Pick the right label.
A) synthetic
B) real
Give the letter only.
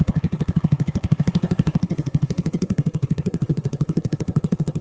A